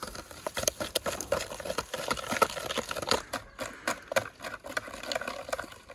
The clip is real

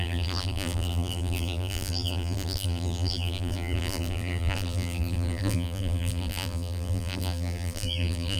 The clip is fake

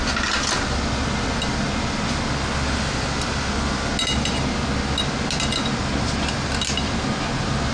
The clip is real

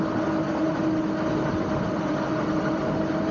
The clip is real